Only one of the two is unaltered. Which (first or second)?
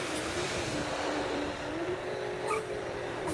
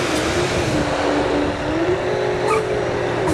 second